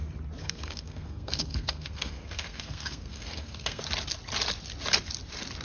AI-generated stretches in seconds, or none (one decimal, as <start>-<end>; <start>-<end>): 0.4-3.8